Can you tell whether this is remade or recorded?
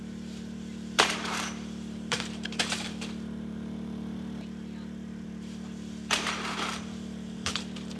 remade